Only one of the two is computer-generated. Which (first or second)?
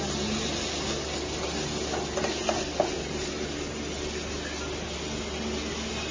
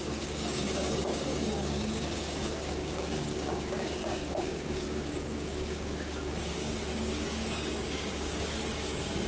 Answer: second